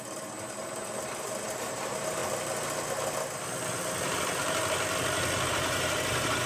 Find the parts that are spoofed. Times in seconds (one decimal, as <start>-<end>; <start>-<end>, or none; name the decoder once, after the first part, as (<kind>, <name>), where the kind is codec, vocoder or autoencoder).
0.0-2.2 (vocoder, BigVGAN v2); 5.5-6.5